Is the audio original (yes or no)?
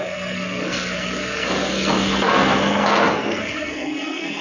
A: no